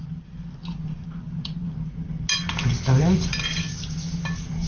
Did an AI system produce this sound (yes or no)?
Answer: no